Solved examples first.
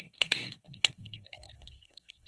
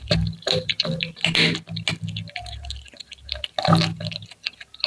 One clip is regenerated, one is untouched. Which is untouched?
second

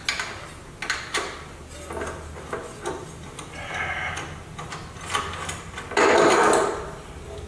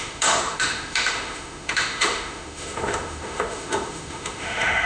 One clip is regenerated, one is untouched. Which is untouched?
first